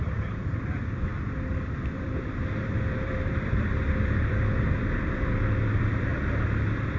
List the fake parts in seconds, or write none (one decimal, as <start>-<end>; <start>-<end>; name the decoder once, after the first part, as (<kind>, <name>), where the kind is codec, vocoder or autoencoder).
0.0-6.1 (vocoder, BigVGAN v2)

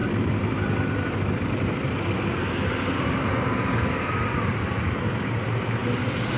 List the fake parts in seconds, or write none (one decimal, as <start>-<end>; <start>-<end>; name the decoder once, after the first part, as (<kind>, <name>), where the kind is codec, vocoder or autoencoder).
0.0-0.7 (vocoder, BigVGAN v2)

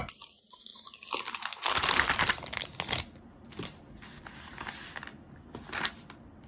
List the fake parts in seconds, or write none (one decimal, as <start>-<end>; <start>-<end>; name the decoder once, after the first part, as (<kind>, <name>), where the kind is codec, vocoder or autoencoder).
none

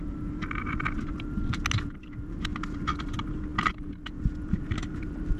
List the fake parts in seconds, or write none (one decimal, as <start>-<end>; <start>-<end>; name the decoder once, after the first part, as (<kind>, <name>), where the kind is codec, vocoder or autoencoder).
none

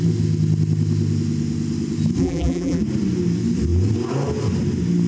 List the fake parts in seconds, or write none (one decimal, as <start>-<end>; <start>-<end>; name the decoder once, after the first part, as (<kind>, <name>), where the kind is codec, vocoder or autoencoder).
2.2-2.8 (vocoder, BigVGAN v2)

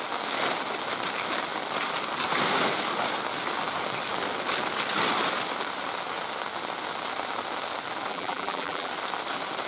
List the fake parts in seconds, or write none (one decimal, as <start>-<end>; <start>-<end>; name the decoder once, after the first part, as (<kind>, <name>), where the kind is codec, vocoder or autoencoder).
8.1-8.9 (vocoder, BigVGAN v2)

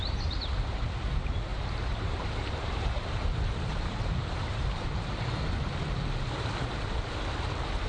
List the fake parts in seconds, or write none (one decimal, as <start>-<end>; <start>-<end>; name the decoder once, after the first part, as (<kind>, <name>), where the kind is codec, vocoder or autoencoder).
1.5-5.5 (vocoder, BigVGAN v2)

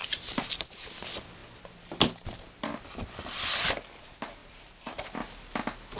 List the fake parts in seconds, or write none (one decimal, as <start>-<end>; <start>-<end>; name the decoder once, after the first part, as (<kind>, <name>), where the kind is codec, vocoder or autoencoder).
0.0-0.5 (vocoder, BigVGAN v2); 4.4-5.1